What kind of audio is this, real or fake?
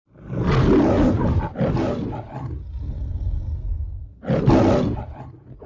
real